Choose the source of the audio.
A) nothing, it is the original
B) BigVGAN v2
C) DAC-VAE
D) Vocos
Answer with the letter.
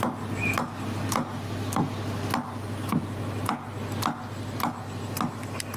A